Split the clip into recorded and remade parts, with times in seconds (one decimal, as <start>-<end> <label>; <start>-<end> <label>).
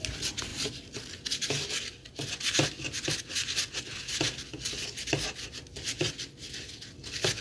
0.0-7.4 recorded